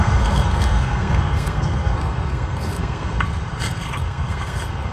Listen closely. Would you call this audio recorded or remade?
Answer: remade